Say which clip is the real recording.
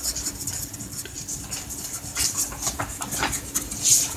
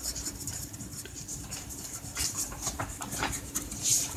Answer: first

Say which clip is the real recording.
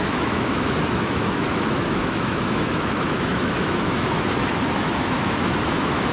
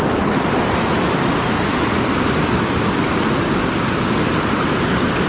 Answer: second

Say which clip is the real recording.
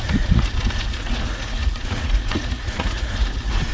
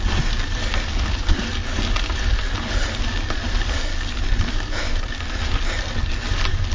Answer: second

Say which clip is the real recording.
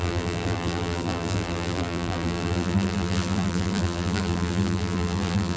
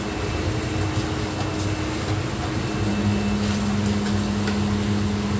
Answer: second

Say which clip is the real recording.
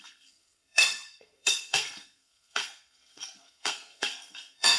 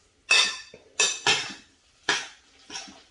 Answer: second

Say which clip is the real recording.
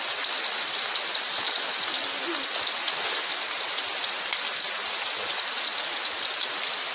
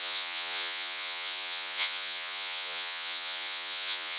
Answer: first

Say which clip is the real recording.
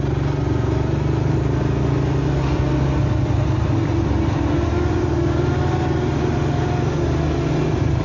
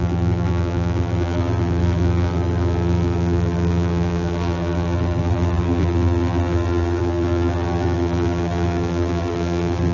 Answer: first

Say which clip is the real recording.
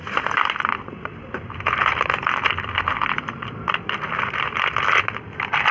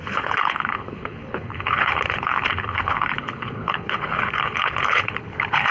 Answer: first